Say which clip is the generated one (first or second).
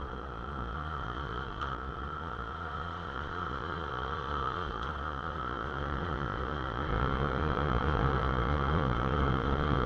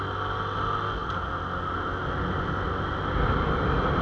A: first